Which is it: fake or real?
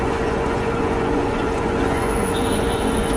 fake